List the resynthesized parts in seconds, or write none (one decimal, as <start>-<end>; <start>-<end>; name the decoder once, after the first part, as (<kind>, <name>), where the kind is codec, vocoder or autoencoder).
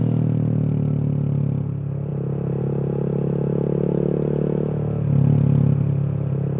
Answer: none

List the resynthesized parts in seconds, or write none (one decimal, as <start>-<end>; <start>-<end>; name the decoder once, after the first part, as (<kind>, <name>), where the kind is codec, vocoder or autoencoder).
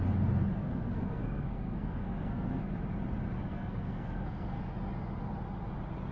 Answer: 0.6-2.8 (codec, SNAC); 3.4-4.6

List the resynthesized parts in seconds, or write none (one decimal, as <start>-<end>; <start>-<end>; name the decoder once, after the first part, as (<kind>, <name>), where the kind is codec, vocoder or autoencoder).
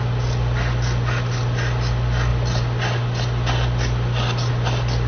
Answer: none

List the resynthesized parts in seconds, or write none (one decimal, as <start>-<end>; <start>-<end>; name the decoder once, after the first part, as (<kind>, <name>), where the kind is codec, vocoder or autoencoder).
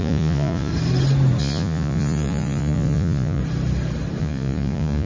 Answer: 0.0-0.7 (vocoder, Vocos); 1.4-3.4; 4.2-5.1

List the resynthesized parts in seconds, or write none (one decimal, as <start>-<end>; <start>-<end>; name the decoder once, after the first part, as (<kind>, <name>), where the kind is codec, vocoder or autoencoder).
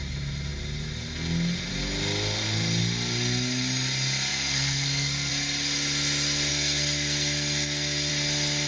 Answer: 4.3-5.3 (codec, SNAC); 6.5-8.1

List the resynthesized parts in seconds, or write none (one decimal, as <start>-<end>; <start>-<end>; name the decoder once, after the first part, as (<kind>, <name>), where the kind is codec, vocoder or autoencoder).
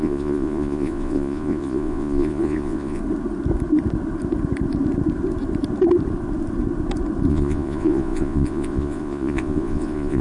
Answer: 0.0-3.0 (vocoder, Vocos); 7.3-10.2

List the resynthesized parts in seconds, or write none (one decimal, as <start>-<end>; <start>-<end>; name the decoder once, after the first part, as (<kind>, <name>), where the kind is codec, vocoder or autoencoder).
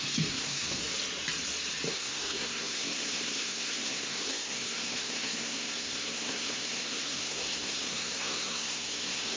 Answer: 0.0-0.8 (codec, SNAC); 1.9-9.4